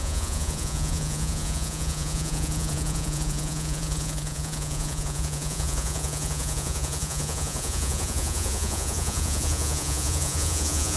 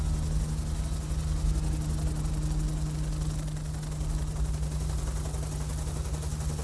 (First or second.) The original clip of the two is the second